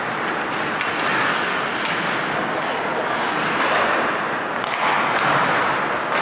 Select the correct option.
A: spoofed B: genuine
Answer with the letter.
B